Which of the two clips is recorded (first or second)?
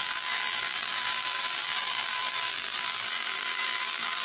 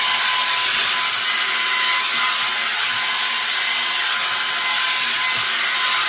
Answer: second